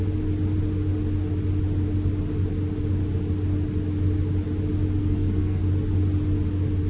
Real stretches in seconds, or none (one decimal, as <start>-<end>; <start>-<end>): 0.0-5.0; 5.6-6.9